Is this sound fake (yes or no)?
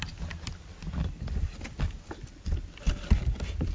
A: no